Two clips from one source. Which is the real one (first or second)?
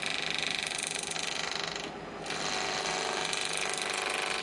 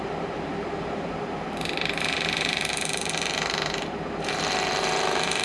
first